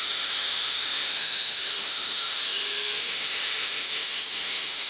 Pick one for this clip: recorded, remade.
remade